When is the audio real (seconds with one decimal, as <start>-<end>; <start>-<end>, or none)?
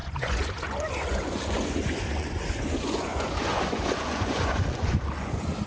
none